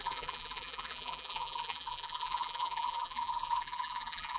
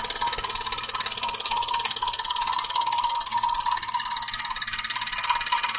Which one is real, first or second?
second